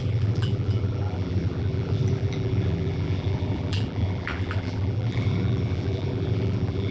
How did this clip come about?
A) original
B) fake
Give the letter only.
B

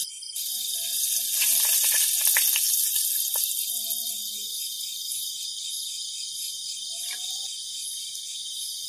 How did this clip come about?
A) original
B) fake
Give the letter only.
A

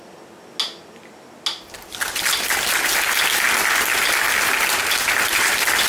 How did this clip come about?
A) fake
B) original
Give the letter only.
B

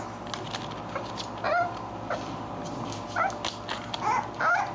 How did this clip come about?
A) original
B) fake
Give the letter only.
A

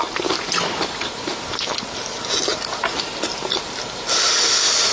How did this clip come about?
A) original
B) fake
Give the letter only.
B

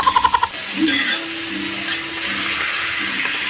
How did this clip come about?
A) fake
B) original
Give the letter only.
B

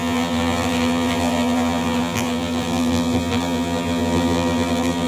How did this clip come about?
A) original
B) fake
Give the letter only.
B